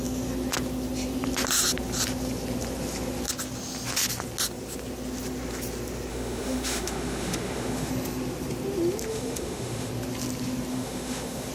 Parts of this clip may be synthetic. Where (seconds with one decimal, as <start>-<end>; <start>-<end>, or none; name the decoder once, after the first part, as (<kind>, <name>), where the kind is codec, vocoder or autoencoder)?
6.1-7.9 (autoencoder, DAC-VAE); 9.1-9.9; 10.7-11.5